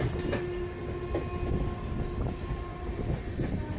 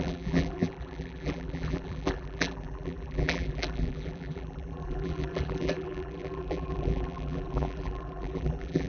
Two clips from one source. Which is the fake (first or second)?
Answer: second